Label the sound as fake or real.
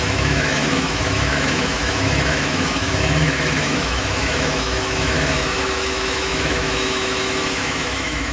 fake